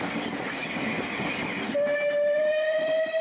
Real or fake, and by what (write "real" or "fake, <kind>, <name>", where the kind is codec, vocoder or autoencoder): real